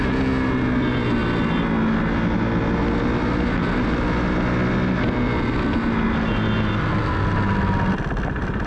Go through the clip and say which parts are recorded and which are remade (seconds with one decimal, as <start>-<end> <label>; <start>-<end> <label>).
0.0-8.7 recorded

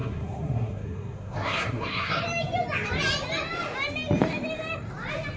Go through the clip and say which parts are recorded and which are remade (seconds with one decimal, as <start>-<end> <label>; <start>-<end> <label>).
0.0-2.2 remade; 2.2-5.4 recorded

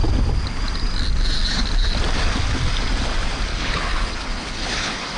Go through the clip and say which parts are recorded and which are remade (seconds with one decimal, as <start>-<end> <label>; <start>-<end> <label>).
0.0-3.5 recorded; 3.5-5.2 remade

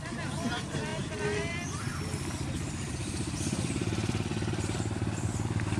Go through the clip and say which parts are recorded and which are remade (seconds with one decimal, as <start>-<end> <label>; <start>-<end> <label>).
0.0-0.9 recorded; 0.9-1.5 remade; 1.5-1.9 recorded; 1.9-5.8 remade

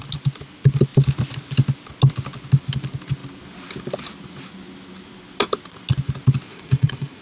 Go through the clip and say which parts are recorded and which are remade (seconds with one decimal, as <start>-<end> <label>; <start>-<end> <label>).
0.0-6.5 recorded; 6.5-7.2 remade